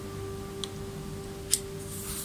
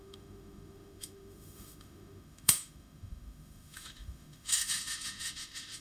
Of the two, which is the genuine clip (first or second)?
first